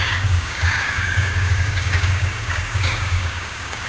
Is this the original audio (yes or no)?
no